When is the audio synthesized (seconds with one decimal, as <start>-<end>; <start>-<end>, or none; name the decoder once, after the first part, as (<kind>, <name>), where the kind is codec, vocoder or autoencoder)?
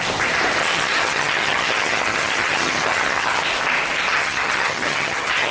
0.6-3.4 (vocoder, HiFi-GAN); 4.1-5.5